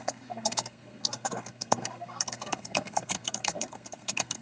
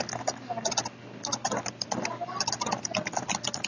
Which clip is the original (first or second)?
second